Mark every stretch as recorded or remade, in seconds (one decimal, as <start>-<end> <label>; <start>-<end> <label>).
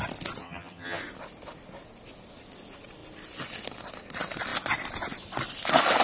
0.0-0.4 recorded; 0.4-1.0 remade; 1.0-6.0 recorded